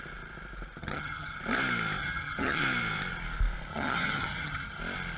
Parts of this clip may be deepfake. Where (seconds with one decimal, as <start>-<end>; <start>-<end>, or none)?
0.8-1.4; 2.0-2.6; 3.7-4.8